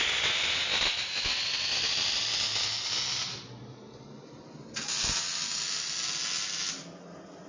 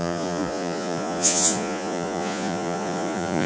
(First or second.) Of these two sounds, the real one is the first